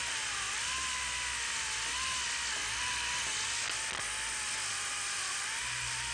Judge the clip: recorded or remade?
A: recorded